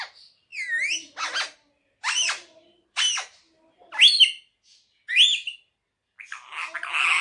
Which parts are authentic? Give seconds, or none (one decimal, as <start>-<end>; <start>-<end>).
0.0-7.2